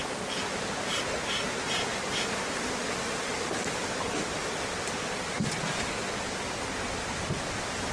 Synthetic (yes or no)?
no